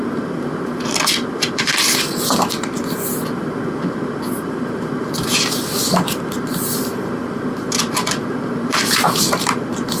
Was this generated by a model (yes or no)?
yes